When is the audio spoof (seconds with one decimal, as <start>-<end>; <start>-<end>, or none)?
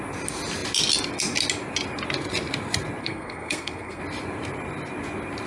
3.0-4.0